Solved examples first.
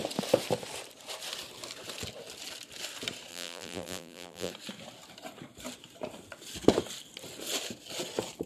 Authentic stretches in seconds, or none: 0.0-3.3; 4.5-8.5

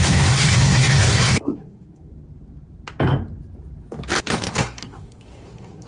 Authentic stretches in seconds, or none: 2.1-4.2

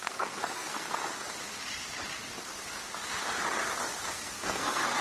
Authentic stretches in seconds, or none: 1.0-4.0

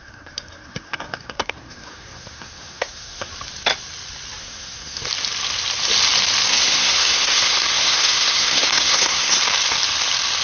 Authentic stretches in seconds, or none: 3.3-4.4; 5.0-6.5; 9.4-10.4